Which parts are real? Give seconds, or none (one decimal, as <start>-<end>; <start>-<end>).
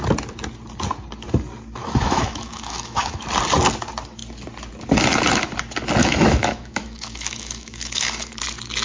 0.0-1.8; 3.2-6.0; 8.4-8.8